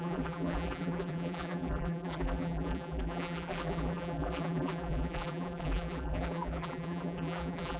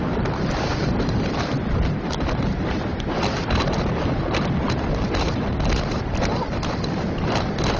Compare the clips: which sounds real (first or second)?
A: second